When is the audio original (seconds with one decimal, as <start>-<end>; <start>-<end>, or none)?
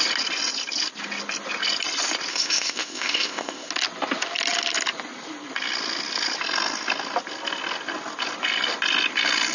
0.0-2.3; 3.7-9.5